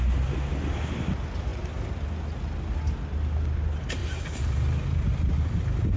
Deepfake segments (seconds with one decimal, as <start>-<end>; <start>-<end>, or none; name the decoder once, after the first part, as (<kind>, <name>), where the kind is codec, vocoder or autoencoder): none

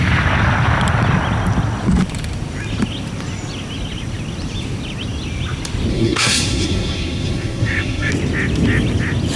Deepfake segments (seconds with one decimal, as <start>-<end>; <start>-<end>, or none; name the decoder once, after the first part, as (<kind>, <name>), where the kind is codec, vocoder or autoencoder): 5.9-8.1 (codec, SNAC)

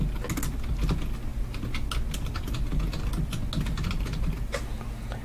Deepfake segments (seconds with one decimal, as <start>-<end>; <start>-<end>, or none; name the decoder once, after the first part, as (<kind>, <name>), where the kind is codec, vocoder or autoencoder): none

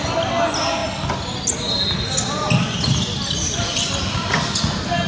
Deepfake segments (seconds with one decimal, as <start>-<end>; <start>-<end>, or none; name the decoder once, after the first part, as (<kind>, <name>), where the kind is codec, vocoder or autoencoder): none